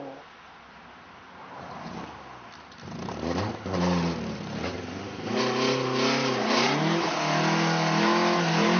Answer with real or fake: real